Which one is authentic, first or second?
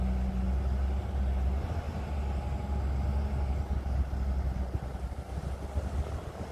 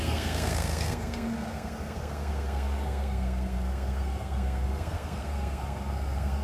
first